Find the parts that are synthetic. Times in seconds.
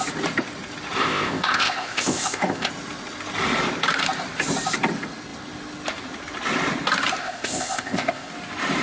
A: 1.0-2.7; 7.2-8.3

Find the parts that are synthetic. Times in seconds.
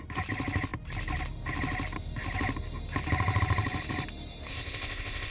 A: 4.5-5.3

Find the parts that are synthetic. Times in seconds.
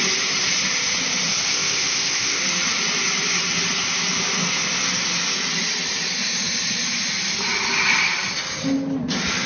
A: 1.3-2.4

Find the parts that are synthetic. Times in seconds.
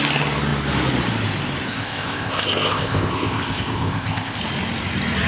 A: 1.7-4.4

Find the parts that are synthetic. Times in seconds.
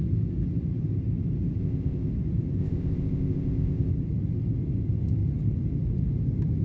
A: 1.6-2.1; 2.6-3.9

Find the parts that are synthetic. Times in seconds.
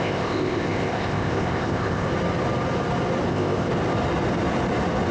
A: 0.0-2.1; 3.3-3.7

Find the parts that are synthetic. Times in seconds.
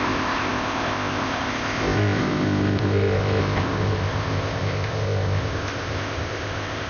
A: 0.0-6.9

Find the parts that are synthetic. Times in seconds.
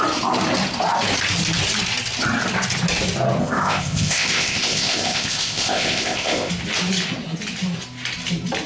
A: 3.4-6.5